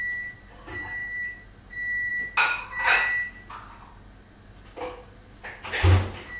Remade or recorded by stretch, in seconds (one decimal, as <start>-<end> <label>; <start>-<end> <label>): 0.0-1.0 recorded; 1.0-1.6 remade; 1.6-6.4 recorded